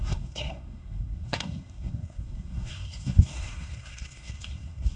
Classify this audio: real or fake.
fake